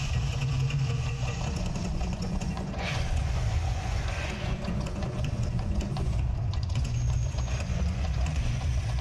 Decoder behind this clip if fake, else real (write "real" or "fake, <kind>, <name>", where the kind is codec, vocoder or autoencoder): fake, vocoder, Vocos